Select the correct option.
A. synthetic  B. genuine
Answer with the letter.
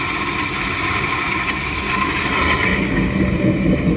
B